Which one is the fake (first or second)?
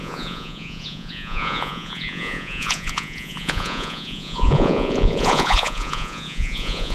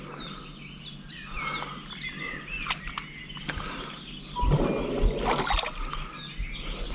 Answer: first